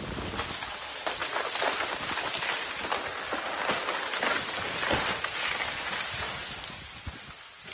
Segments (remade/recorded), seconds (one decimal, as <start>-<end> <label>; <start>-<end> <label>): 0.0-7.7 recorded